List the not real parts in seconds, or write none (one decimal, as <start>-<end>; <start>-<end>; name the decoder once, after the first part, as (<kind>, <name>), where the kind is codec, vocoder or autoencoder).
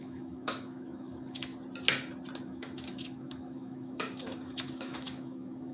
0.0-1.5 (autoencoder, DAC-VAE); 2.4-5.7